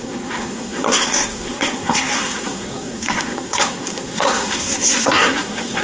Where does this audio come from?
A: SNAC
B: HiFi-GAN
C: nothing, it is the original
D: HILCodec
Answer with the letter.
A